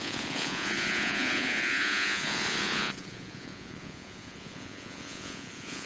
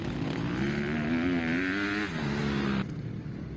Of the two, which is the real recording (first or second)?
second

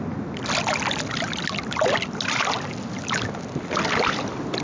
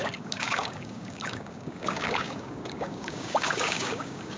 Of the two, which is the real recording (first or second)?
first